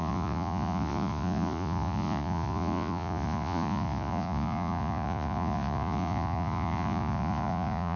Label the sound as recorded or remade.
remade